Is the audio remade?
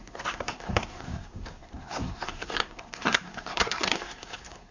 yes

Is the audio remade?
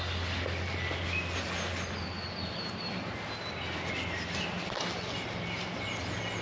no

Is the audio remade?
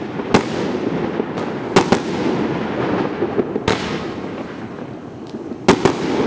no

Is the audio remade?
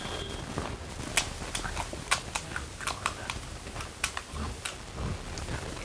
no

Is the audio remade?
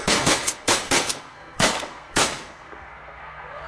yes